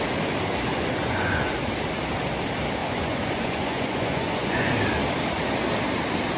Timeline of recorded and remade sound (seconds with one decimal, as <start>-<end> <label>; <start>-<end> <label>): 0.0-0.7 recorded; 0.7-1.5 remade; 1.5-2.8 recorded; 2.8-4.7 remade; 4.7-6.4 recorded